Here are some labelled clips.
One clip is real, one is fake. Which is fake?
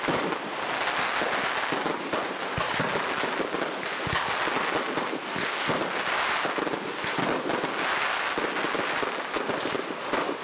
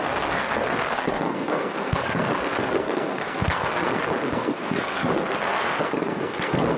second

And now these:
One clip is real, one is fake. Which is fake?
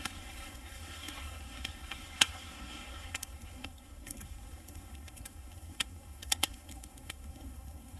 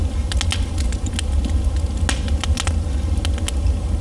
first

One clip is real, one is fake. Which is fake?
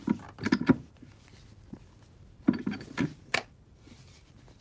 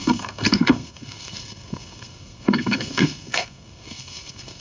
second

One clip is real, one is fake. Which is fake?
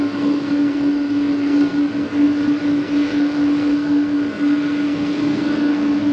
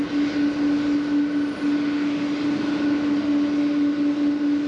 first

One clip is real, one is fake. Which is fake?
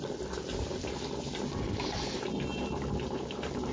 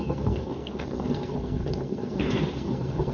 second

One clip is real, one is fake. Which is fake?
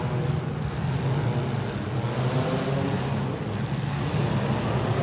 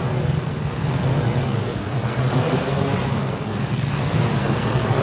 second